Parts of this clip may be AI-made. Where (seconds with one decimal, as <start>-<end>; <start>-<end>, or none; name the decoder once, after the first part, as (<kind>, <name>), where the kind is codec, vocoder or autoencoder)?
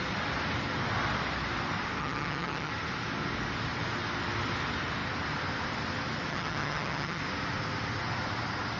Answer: 2.0-2.7 (vocoder, HiFi-GAN); 6.3-7.2